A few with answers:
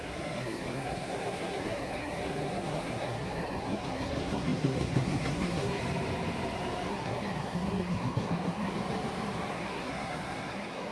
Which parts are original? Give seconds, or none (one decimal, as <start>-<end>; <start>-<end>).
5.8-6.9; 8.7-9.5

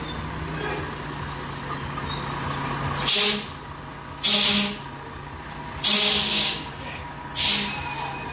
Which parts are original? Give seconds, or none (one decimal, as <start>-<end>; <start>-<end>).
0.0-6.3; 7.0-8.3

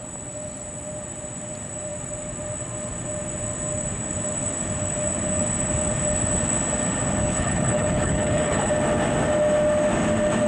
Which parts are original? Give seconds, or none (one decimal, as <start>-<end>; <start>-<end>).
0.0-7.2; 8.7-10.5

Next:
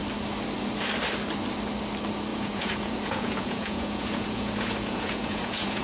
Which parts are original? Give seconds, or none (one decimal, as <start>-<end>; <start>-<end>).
0.0-2.3

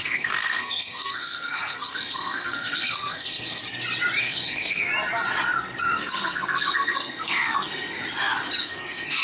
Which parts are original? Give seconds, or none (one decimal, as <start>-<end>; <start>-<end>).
3.6-4.2; 4.9-5.8; 8.0-8.6

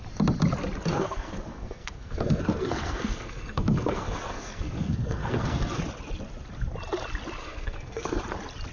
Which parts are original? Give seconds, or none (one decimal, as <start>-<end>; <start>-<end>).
0.0-0.9; 5.8-7.4; 8.2-8.7

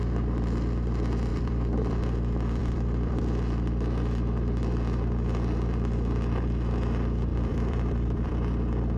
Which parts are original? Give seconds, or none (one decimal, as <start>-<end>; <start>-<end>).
0.0-1.3; 1.9-2.6; 3.2-7.3; 8.3-9.0